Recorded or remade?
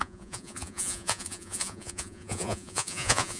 remade